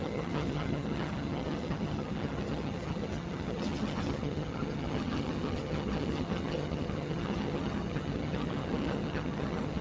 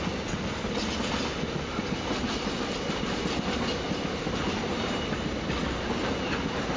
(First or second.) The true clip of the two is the second